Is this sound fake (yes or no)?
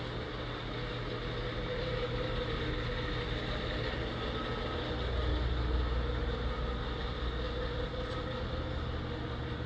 no